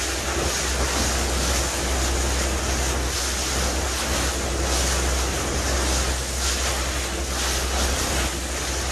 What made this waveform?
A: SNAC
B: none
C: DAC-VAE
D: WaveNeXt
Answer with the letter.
B